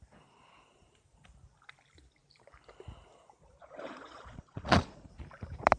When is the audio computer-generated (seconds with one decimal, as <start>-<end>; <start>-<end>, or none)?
3.6-5.1